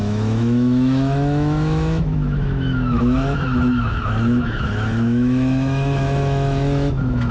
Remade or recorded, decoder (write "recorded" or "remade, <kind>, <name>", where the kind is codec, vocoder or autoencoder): remade, autoencoder, DAC-VAE